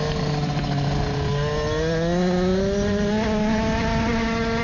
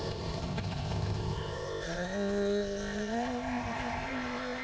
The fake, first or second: second